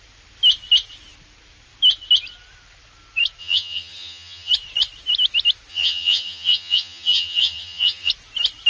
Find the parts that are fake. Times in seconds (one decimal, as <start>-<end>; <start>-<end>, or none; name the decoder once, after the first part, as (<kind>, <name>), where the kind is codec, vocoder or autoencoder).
3.4-4.5 (vocoder, HiFi-GAN); 5.7-8.1